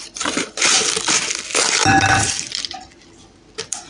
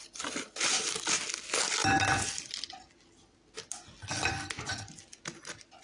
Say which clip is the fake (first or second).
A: first